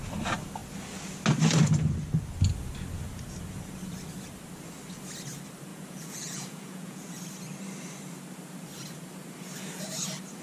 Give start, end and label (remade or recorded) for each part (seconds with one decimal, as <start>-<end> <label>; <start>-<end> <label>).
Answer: 0.0-5.7 recorded; 5.7-7.2 remade; 7.2-10.4 recorded